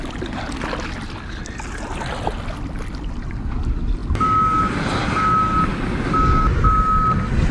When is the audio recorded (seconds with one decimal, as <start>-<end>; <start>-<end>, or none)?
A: 0.0-7.5